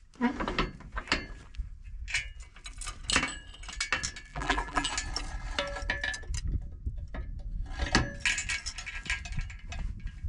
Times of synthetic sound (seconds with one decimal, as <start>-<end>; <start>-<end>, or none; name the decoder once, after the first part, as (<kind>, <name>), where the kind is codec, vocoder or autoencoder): 4.3-4.9 (vocoder, BigVGAN v2)